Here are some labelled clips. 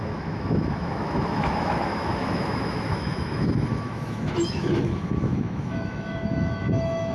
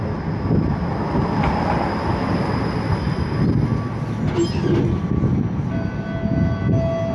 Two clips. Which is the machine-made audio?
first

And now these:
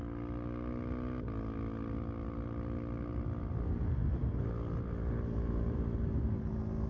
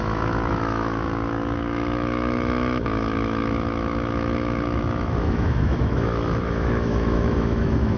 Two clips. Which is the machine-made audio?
second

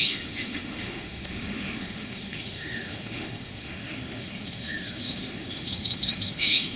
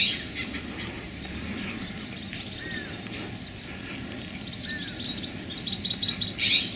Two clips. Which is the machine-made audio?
first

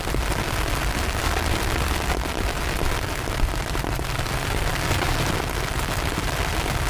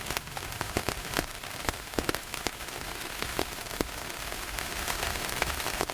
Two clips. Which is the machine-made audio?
second